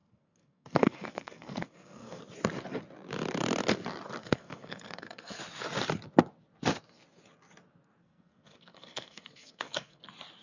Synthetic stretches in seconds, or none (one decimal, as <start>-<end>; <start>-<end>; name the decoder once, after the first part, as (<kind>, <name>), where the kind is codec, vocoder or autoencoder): 0.0-2.2 (codec, SNAC); 4.2-5.4; 8.0-10.0